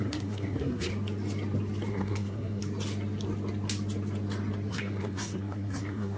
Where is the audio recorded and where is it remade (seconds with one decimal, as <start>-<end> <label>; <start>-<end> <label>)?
0.0-0.9 remade; 0.9-1.9 recorded; 1.9-2.6 remade; 2.6-4.7 recorded; 4.7-6.2 remade